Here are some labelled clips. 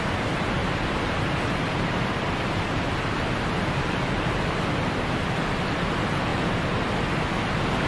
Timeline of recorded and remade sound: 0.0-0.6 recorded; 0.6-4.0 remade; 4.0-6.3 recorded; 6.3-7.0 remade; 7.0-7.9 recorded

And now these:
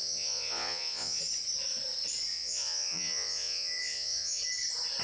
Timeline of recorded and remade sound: 0.0-1.2 remade; 1.2-2.3 recorded; 2.3-4.4 remade; 4.4-5.0 recorded

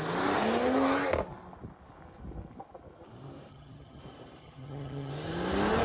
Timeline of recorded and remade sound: 0.0-3.5 recorded; 3.5-4.0 remade; 4.0-4.4 recorded; 4.4-5.1 remade; 5.1-5.8 recorded